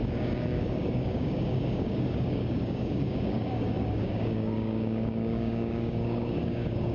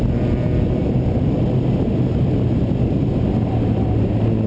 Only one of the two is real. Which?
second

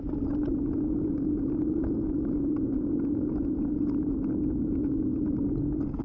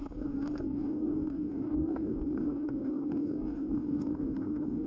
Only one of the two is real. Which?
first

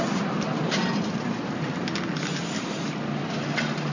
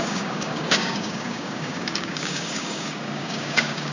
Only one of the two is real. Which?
first